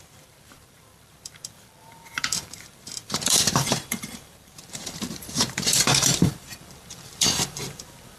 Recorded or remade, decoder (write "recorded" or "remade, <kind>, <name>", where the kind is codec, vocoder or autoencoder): remade, vocoder, BigVGAN v2